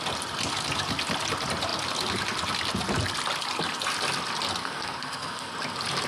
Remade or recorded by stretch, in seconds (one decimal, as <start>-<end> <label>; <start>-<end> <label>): 0.0-4.6 recorded; 4.6-5.5 remade; 5.5-6.1 recorded